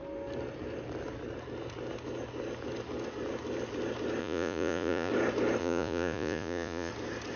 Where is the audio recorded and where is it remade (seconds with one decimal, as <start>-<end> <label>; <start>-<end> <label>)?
0.0-4.2 recorded; 4.2-5.1 remade; 5.1-5.6 recorded; 5.6-6.9 remade; 6.9-7.4 recorded